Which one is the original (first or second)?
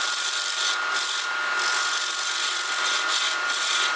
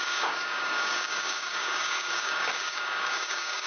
first